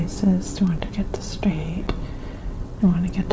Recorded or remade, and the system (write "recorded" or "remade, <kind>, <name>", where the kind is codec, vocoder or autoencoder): remade, vocoder, WaveNeXt